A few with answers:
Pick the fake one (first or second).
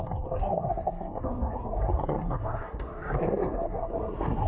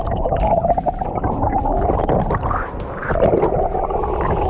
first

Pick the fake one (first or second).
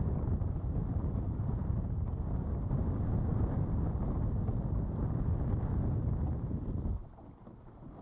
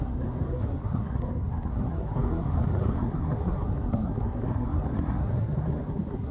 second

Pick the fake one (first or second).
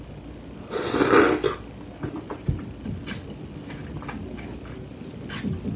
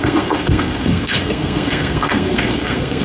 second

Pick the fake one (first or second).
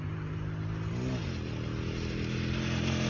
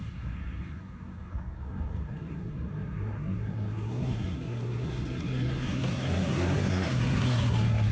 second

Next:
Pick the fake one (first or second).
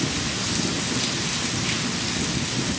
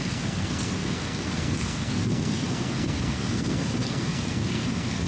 second